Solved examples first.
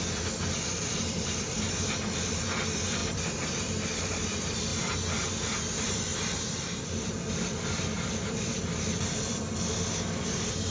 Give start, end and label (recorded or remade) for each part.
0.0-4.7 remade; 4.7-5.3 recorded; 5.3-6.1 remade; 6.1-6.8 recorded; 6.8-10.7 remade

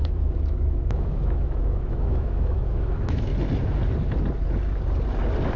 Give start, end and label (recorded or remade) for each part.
0.0-3.3 remade; 3.3-5.6 recorded

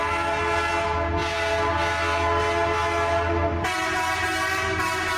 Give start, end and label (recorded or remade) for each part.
0.0-5.2 recorded